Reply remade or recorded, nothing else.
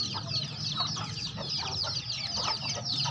recorded